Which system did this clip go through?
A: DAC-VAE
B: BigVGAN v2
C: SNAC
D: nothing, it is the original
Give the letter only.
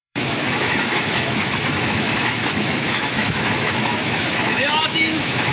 A